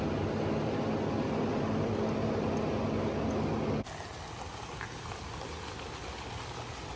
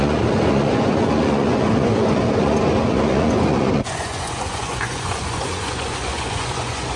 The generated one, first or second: second